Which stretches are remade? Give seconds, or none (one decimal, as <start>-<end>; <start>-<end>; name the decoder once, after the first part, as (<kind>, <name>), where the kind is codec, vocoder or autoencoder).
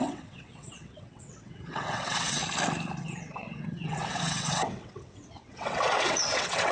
0.0-2.4 (vocoder, WaveNeXt); 3.0-6.7